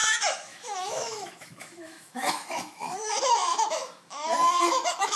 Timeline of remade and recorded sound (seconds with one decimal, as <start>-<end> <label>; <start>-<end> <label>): 0.0-5.2 remade